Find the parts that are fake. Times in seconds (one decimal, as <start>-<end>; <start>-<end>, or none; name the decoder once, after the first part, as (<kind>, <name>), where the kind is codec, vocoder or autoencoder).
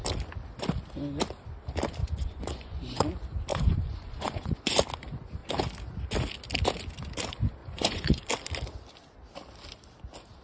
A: 2.0-3.1 (vocoder, Vocos); 3.5-4.7; 7.6-8.3